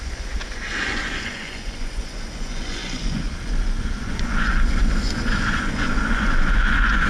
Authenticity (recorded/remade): remade